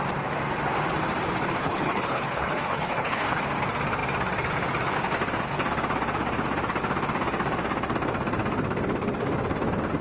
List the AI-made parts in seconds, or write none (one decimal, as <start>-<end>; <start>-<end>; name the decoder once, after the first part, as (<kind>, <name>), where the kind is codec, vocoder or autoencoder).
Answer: 1.6-3.4 (codec, HILCodec)